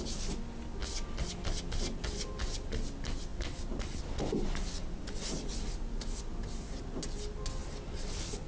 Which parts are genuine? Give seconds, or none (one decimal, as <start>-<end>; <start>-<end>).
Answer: 0.0-8.5